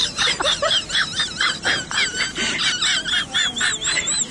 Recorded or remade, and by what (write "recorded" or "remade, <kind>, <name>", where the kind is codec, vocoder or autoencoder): recorded